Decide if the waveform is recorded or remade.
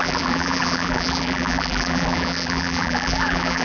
remade